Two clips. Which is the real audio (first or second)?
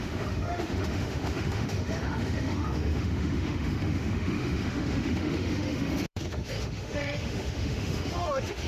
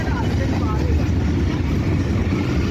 second